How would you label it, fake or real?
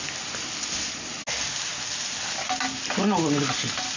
real